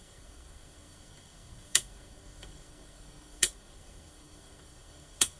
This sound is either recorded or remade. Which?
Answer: remade